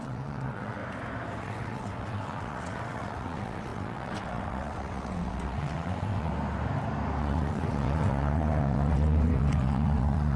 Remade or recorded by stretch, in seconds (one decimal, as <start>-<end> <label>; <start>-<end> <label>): 0.0-0.8 remade; 0.8-1.4 recorded; 1.4-6.3 remade; 6.3-7.2 recorded; 7.2-10.4 remade